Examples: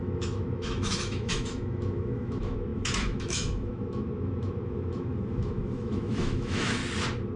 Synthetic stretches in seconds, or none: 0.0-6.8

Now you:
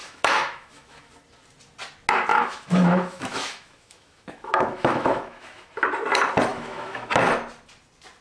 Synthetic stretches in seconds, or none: 0.0-1.1; 2.3-5.7; 6.5-7.1

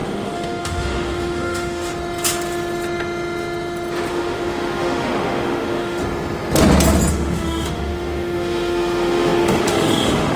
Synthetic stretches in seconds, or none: 0.0-1.9; 4.1-6.0; 7.1-10.4

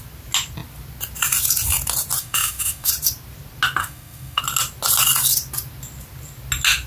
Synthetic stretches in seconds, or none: 2.2-2.9; 3.8-4.4

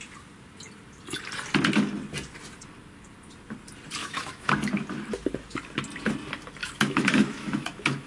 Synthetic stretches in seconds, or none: 4.0-4.5; 6.6-8.1

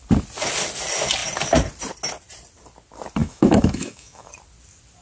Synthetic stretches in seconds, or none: 3.2-4.3

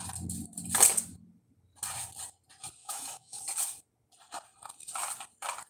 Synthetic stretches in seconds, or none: 2.8-3.4